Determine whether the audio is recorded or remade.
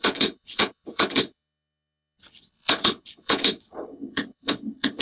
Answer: remade